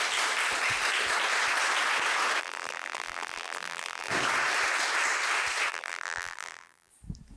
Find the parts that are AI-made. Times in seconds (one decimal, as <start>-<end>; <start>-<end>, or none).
2.4-4.1; 5.7-6.9